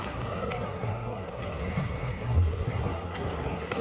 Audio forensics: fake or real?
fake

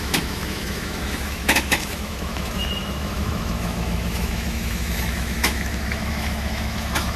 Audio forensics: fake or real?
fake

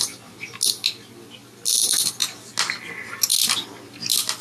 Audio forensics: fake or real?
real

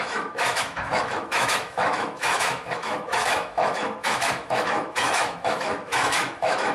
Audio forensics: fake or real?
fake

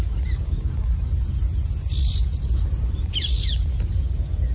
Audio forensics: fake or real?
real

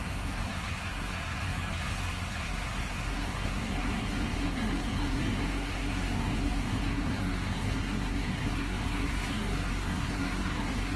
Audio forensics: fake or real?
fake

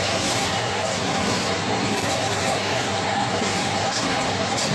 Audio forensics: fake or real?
fake